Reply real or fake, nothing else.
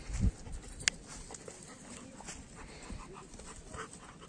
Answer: real